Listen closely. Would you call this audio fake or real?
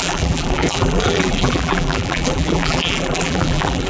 fake